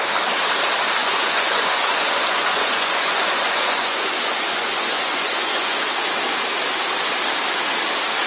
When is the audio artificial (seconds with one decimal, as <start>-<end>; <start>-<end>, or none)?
1.0-5.8